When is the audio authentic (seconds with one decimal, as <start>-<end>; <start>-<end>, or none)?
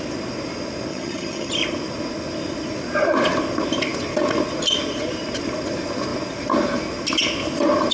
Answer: 0.0-0.9; 1.5-7.9